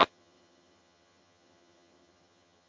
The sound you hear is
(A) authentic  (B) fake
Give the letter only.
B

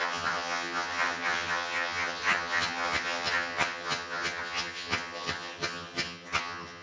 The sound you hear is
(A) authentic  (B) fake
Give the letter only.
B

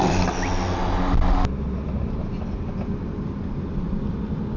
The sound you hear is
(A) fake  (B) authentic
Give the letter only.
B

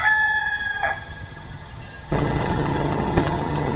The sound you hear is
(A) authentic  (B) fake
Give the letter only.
B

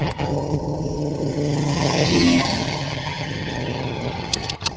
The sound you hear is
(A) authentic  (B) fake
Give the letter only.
B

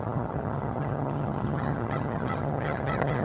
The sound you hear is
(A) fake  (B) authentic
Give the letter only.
A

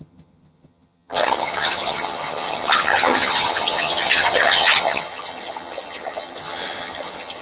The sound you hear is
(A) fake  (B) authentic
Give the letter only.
A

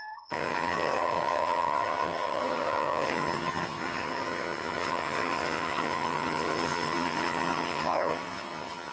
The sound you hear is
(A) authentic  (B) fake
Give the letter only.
B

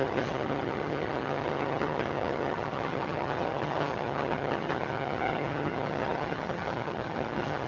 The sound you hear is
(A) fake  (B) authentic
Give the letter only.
A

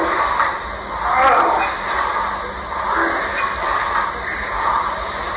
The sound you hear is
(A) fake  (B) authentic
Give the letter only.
B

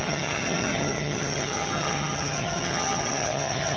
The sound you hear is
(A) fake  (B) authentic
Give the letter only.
A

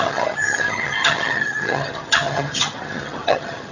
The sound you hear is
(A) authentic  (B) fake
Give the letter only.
B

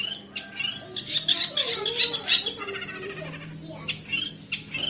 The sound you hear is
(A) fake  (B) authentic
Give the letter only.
B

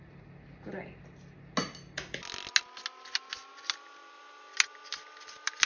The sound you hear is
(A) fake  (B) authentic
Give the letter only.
B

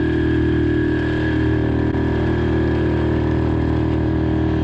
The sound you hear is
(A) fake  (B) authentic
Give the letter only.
B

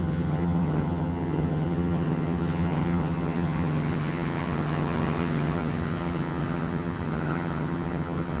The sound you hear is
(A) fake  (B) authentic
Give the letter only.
A